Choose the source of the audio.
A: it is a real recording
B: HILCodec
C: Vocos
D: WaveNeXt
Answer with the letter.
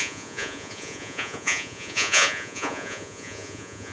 C